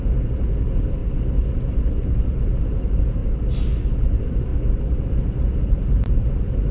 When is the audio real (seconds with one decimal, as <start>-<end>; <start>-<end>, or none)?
1.0-1.6; 3.2-4.0; 4.5-5.6